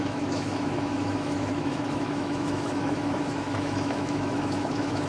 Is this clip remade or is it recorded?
remade